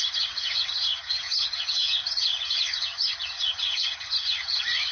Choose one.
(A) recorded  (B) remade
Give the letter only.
B